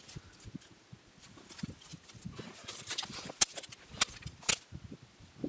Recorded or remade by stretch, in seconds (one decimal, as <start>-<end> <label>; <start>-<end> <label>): 0.0-5.5 recorded